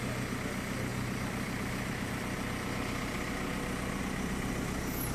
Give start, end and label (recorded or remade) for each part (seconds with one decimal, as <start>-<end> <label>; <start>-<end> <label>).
0.0-0.9 recorded; 0.9-4.0 remade; 4.0-5.1 recorded